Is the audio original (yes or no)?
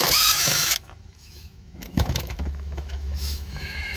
no